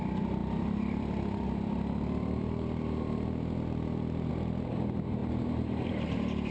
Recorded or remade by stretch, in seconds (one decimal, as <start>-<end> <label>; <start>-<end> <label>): 0.0-6.5 recorded